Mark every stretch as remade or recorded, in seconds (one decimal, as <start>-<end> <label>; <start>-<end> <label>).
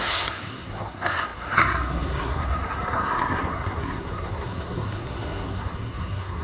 0.0-6.4 remade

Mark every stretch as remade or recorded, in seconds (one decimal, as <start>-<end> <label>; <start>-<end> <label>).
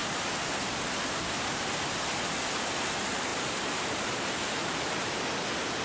0.0-3.3 recorded; 3.3-5.2 remade; 5.2-5.8 recorded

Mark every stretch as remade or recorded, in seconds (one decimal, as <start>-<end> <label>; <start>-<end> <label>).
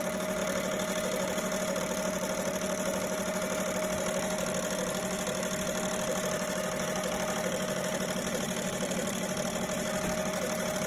0.0-10.9 recorded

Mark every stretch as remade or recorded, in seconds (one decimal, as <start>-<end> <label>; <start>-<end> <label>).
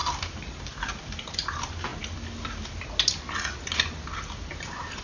0.0-1.9 remade; 1.9-4.4 recorded; 4.4-5.0 remade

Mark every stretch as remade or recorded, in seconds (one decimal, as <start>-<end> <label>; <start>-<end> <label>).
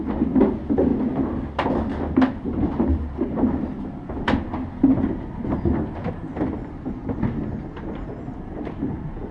0.0-9.3 recorded